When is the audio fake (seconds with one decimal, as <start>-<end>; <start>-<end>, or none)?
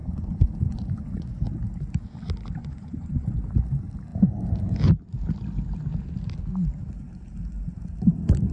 0.0-1.4; 2.6-3.3